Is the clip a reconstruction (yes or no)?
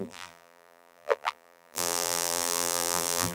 yes